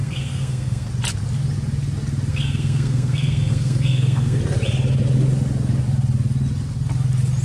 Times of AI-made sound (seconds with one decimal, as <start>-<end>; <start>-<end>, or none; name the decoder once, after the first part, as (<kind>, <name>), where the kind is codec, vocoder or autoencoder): 0.0-0.9 (codec, SNAC); 2.3-4.4